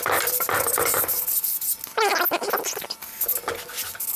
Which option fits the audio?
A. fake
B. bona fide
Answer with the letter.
B